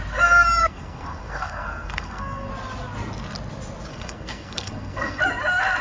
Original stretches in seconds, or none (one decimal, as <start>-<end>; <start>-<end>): 0.0-0.6; 2.5-3.9; 5.2-5.8